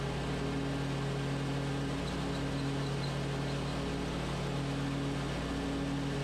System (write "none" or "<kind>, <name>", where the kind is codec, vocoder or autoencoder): none